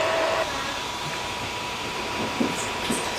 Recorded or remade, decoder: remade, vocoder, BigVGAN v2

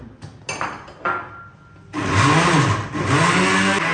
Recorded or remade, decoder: recorded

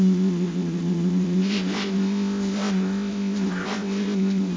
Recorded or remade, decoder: remade, codec, ZipCodec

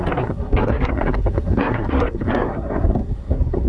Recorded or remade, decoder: remade, codec, SNAC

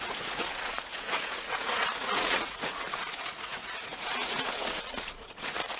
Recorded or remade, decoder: remade, vocoder, Vocos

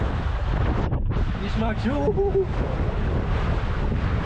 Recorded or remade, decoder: recorded